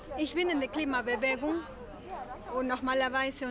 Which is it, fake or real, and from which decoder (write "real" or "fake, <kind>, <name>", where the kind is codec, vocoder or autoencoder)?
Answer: real